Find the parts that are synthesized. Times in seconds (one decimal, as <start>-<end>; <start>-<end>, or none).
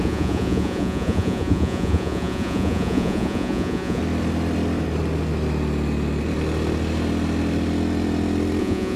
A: 0.0-4.0; 8.6-9.0